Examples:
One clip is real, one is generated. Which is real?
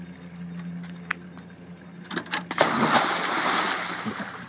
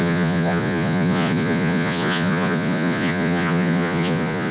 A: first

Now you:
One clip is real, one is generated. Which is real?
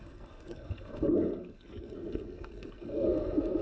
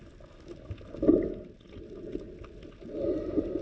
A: second